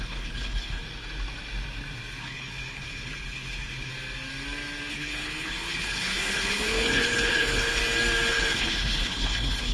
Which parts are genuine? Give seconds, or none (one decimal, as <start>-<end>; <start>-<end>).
0.8-2.2; 3.9-4.9; 7.8-8.3